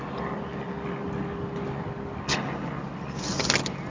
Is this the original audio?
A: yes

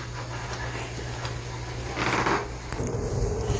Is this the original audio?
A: yes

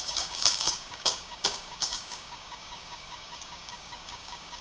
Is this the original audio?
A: no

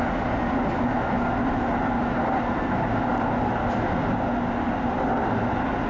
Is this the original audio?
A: yes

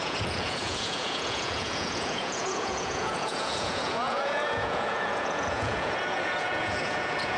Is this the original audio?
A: no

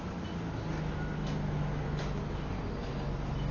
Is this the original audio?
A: yes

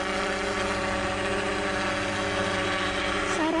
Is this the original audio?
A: yes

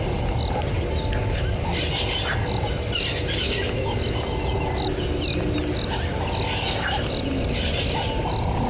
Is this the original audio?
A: yes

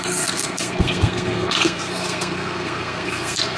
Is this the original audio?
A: no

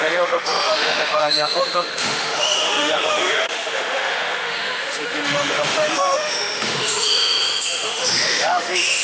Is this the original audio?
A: no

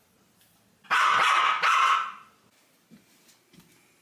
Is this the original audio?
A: yes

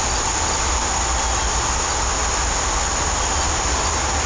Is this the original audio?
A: yes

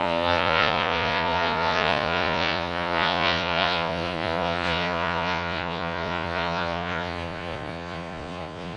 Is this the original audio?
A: no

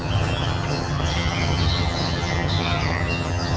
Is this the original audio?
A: no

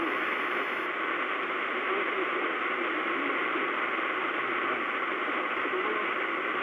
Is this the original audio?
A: yes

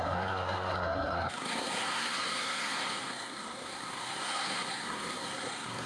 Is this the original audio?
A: no